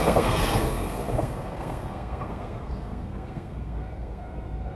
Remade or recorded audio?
remade